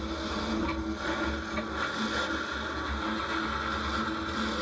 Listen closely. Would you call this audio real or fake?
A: real